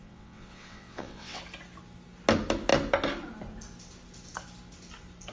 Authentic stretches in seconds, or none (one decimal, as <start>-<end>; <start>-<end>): 1.4-5.3